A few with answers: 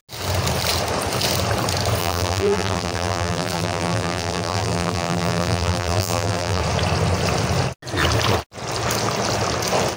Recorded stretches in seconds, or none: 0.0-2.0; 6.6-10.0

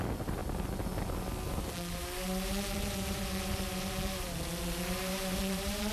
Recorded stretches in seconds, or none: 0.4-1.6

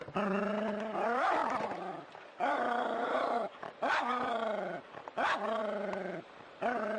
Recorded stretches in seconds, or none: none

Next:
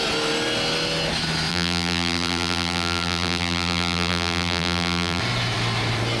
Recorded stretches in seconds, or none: 0.0-1.5; 5.2-6.2

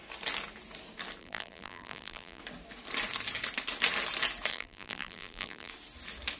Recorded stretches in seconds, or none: 0.0-1.2; 2.4-4.5; 5.7-6.4

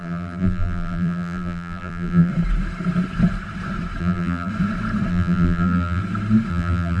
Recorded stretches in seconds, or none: 2.3-4.0; 4.5-5.1; 6.0-6.5